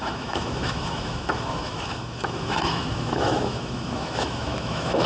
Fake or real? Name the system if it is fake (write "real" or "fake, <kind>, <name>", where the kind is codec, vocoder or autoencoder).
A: fake, autoencoder, DAC-VAE